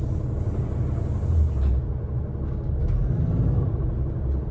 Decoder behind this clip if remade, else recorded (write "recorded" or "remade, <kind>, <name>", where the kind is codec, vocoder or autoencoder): recorded